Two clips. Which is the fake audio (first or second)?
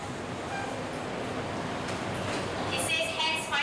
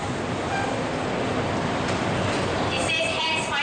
second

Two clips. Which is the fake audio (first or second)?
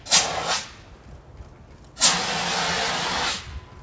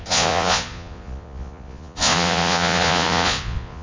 second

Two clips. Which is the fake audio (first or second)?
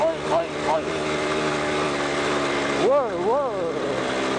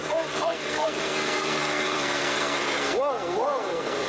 second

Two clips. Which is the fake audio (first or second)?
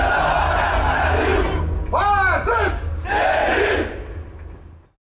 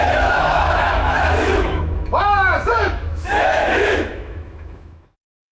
second